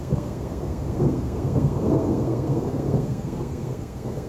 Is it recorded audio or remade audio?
remade